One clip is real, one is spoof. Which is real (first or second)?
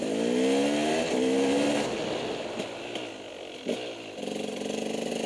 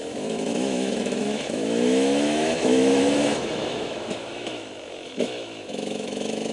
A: first